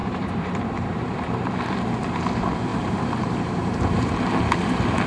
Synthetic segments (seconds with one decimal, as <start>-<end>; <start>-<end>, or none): 0.0-1.5; 2.7-4.1